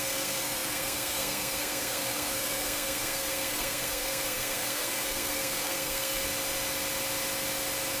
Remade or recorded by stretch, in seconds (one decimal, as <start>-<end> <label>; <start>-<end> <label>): 0.0-6.2 remade; 6.2-8.0 recorded